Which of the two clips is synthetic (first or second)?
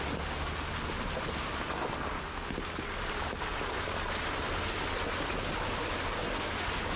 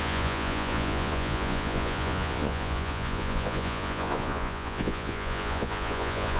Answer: second